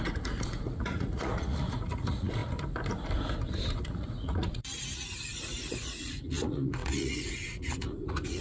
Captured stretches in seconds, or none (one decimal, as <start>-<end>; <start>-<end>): 2.4-3.8